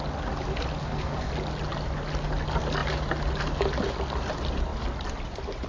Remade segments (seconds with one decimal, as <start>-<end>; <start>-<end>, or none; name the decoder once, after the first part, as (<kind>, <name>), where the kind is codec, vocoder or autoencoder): 0.8-1.3 (codec, SNAC)